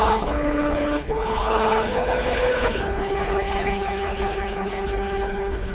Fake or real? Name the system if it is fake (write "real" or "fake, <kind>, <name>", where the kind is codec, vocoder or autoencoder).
fake, codec, HILCodec